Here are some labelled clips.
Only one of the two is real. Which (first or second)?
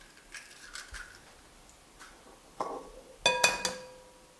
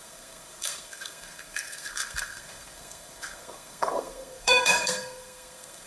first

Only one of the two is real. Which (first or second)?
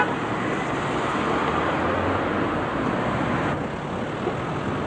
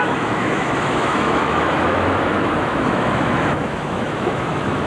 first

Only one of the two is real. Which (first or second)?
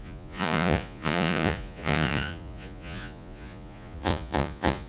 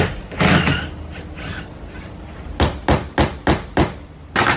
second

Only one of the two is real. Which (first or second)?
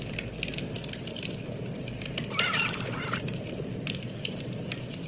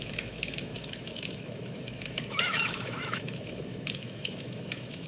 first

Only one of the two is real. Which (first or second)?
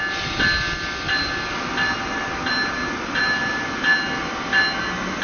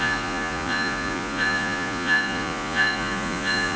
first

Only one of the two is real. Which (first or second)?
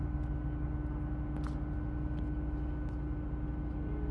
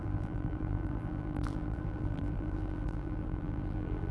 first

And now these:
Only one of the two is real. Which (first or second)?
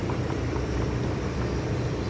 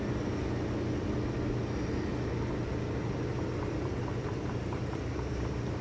second